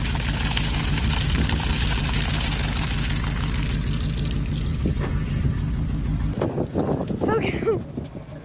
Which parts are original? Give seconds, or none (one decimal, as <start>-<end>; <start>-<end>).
0.0-8.4